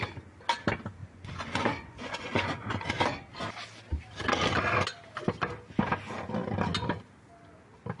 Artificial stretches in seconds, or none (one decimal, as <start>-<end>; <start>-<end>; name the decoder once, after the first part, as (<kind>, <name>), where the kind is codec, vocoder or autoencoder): 1.0-2.9 (vocoder, Vocos)